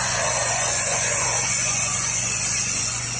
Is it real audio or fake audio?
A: fake